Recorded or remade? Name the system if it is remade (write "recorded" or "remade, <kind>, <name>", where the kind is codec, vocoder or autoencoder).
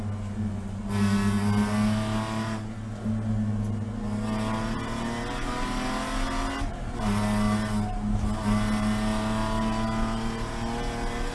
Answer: recorded